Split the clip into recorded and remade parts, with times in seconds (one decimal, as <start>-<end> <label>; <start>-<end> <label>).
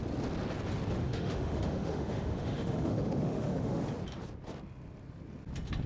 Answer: 0.0-1.0 recorded; 1.0-3.8 remade; 3.8-5.9 recorded